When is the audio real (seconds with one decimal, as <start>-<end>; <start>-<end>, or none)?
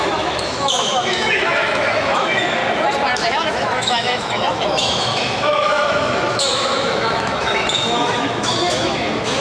2.6-3.3